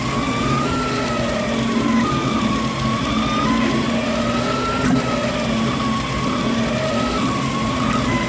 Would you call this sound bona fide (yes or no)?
yes